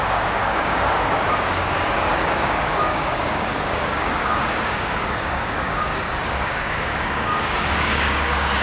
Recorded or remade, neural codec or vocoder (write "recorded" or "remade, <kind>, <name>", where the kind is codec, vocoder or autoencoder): remade, codec, DAC